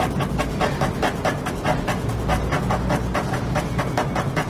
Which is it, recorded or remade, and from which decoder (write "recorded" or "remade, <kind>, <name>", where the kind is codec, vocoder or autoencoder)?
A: recorded